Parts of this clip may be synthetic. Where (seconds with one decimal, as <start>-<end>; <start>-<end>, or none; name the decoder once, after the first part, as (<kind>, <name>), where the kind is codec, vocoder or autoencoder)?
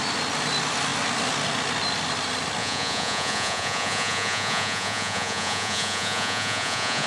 2.6-7.1 (vocoder, Vocos)